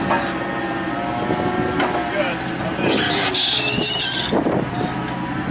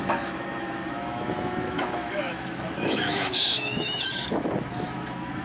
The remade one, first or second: second